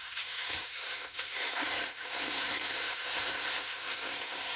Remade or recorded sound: remade